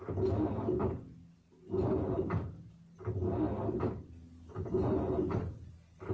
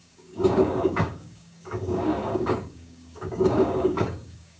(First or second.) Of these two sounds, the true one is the first